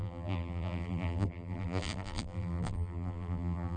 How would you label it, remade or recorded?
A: remade